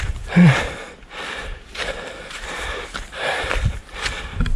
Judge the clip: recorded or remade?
recorded